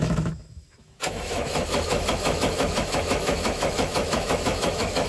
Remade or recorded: remade